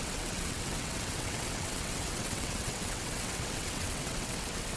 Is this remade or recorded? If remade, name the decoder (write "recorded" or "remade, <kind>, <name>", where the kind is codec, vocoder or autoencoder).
remade, vocoder, WaveNeXt